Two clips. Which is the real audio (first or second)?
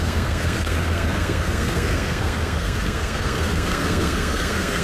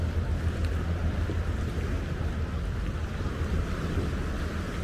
second